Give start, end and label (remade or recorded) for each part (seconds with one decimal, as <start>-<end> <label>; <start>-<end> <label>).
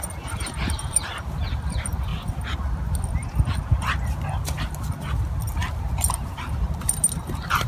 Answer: 0.0-2.1 remade; 2.1-6.1 recorded; 6.1-7.7 remade